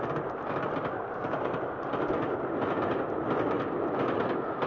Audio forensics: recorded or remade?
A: recorded